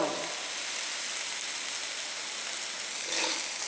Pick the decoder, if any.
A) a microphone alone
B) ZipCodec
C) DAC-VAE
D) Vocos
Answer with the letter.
A